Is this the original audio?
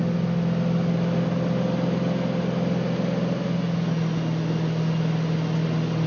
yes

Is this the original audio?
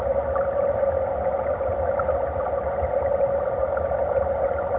yes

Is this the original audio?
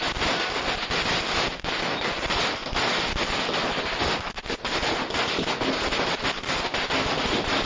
yes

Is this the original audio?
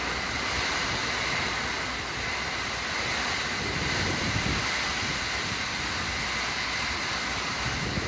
no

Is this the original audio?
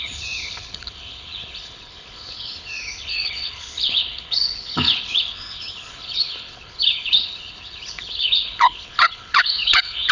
no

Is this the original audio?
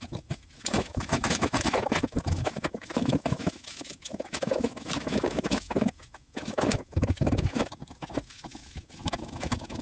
no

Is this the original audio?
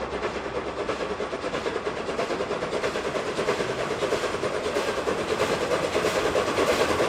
yes